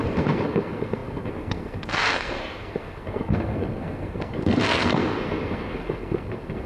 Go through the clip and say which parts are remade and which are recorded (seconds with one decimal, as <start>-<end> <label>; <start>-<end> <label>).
0.0-6.7 remade